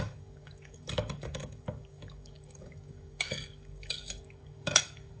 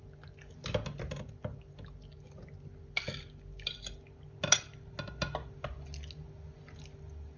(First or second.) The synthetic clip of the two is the first